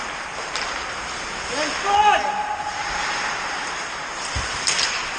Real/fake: real